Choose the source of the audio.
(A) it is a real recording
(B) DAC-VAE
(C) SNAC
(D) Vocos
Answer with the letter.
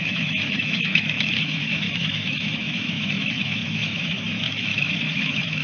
B